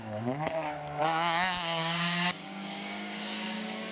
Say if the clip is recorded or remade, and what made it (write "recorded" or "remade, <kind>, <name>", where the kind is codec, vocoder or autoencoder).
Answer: remade, codec, DAC